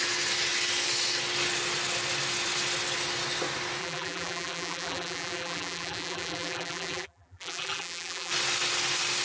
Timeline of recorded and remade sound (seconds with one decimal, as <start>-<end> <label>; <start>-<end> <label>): 0.0-3.8 recorded; 3.8-8.3 remade; 8.3-9.2 recorded